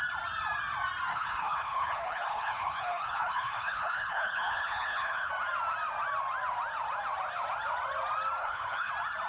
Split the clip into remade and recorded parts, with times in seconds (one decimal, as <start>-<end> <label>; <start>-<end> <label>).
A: 0.0-1.1 recorded; 1.1-5.3 remade; 5.3-8.4 recorded; 8.4-8.9 remade; 8.9-9.3 recorded